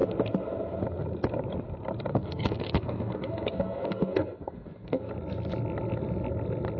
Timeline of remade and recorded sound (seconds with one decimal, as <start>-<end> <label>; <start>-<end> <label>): 0.0-2.1 recorded; 2.1-5.1 remade; 5.1-6.8 recorded